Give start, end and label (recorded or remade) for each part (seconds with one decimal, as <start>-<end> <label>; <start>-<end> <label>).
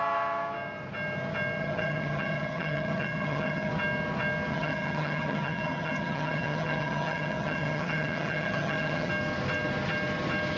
0.0-1.6 recorded; 1.6-3.7 remade; 3.7-4.5 recorded; 4.5-9.1 remade; 9.1-10.6 recorded